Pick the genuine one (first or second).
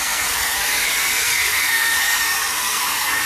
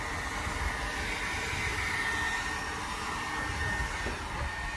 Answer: second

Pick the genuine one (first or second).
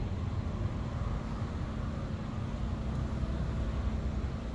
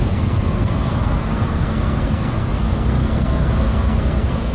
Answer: first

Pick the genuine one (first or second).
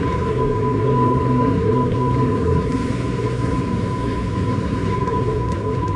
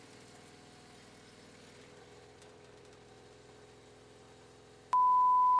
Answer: second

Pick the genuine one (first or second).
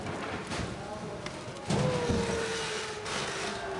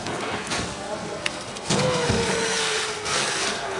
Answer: first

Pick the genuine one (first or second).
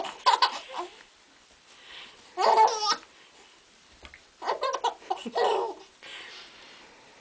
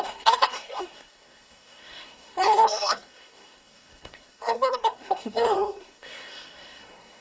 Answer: first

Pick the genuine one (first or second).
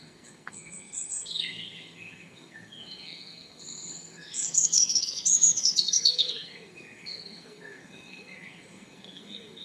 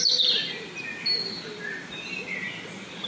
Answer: second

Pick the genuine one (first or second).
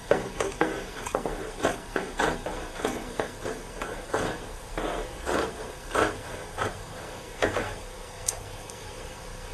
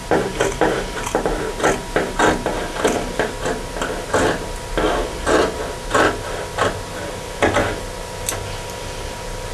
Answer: second